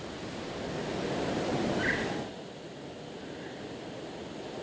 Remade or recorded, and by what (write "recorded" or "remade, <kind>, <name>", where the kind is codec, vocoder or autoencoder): recorded